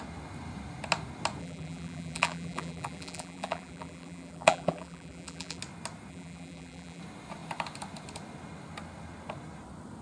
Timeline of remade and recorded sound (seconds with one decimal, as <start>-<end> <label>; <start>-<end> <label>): 0.0-1.4 recorded; 1.4-5.6 remade; 5.6-6.1 recorded; 6.1-7.0 remade; 7.0-10.0 recorded